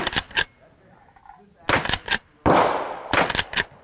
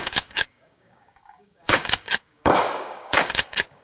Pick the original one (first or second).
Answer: first